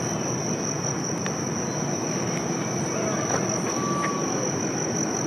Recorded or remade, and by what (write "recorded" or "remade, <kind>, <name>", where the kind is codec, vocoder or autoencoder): recorded